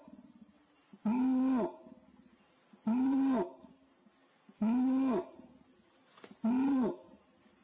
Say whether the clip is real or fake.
real